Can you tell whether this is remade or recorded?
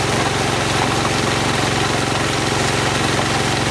recorded